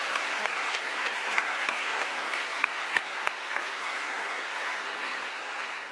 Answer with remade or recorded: remade